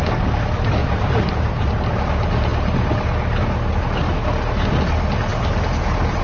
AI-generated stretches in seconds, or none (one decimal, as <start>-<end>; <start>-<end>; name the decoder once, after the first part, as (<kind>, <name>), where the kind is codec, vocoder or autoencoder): 0.8-1.9 (vocoder, BigVGAN v2); 5.3-6.2